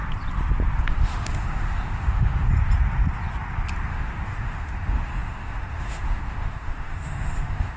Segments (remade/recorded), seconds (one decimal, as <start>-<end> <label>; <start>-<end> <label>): 0.0-0.8 recorded; 0.8-2.5 remade; 2.5-3.9 recorded; 3.9-7.8 remade